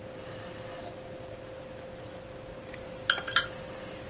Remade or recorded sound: recorded